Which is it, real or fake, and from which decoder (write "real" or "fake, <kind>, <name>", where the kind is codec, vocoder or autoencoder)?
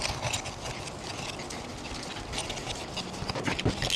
real